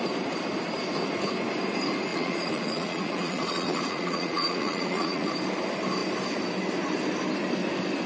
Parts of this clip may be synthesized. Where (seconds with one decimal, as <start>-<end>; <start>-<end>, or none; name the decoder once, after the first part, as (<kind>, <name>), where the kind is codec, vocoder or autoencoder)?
2.1-5.3 (vocoder, Vocos)